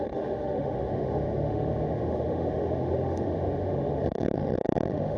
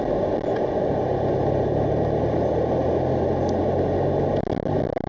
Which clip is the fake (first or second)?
first